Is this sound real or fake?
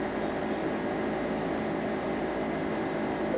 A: real